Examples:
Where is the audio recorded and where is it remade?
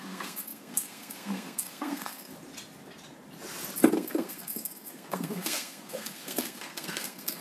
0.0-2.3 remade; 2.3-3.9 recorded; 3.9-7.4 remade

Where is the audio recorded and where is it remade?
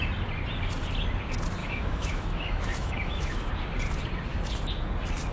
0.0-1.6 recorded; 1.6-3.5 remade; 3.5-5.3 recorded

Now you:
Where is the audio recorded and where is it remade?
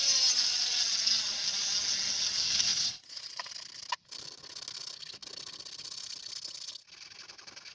0.0-2.7 recorded; 2.7-3.5 remade; 3.5-7.7 recorded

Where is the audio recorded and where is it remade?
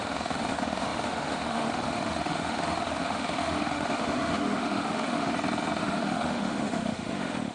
0.0-5.3 remade; 5.3-5.8 recorded; 5.8-7.5 remade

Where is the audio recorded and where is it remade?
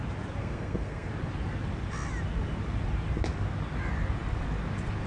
0.0-0.4 recorded; 0.4-1.1 remade; 1.1-5.1 recorded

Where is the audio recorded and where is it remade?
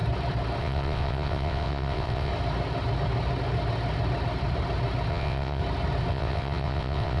0.0-0.6 recorded; 0.6-2.3 remade; 2.3-5.1 recorded; 5.1-5.6 remade; 5.6-6.1 recorded; 6.1-7.2 remade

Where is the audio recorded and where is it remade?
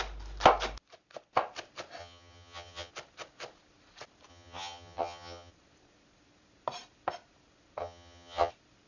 0.0-2.0 recorded; 2.0-2.9 remade; 2.9-4.3 recorded; 4.3-5.5 remade; 5.5-7.8 recorded; 7.8-8.5 remade; 8.5-8.9 recorded